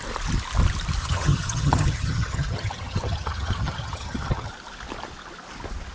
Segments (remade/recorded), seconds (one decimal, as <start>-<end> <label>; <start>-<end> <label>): 0.0-1.0 recorded; 1.0-4.5 remade; 4.5-5.9 recorded